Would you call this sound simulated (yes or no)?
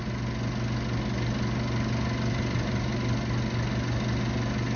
no